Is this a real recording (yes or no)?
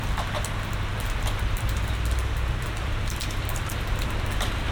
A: yes